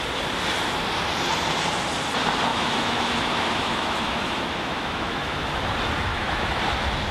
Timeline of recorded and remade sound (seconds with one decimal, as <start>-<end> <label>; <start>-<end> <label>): 0.0-2.5 recorded; 2.5-5.4 remade; 5.4-6.1 recorded; 6.1-6.6 remade; 6.6-7.1 recorded